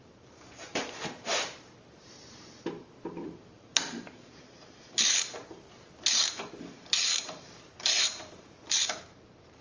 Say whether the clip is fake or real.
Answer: fake